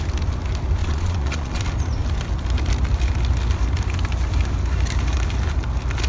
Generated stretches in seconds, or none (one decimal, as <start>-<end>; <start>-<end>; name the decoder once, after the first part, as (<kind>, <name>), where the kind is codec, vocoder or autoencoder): 0.8-1.6 (vocoder, Vocos)